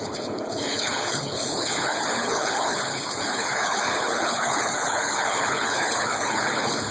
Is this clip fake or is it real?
fake